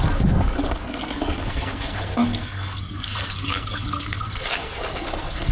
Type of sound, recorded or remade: remade